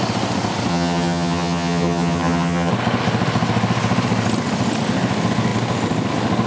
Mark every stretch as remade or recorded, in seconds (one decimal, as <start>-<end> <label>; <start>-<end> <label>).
0.0-0.7 recorded; 0.7-2.7 remade; 2.7-6.5 recorded